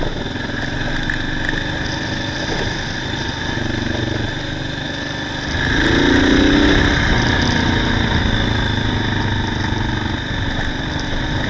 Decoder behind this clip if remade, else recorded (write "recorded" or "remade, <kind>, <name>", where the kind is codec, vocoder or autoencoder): recorded